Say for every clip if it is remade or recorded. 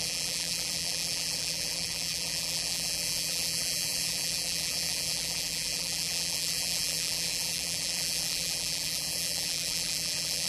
remade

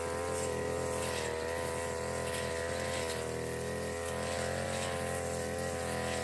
recorded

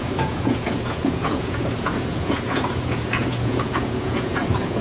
remade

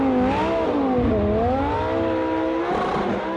recorded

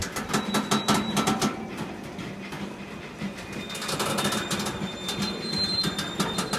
recorded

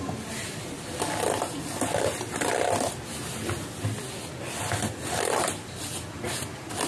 recorded